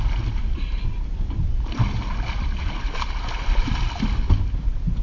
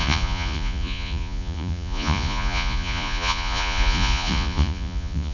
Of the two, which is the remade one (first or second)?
second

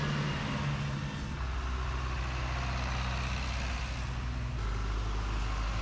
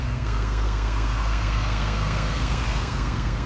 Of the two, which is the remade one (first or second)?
second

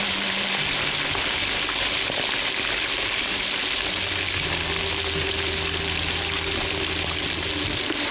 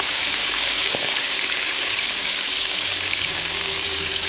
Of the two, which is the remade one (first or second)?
second